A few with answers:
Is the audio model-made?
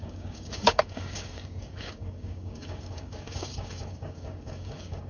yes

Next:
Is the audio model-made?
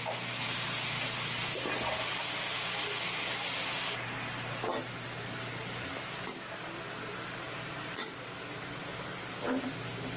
no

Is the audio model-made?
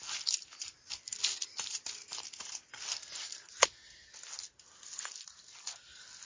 no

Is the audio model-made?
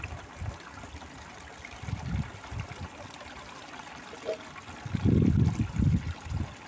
no